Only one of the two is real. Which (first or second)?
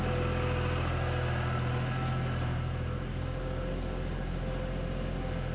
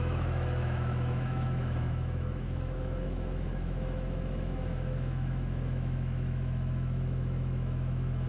first